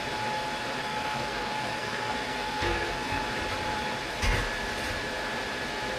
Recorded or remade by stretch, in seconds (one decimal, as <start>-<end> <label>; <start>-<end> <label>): 0.0-0.8 recorded; 0.8-3.2 remade; 3.2-6.0 recorded